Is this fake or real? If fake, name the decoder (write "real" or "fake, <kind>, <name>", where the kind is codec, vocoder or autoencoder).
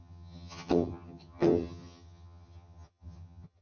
fake, vocoder, HiFi-GAN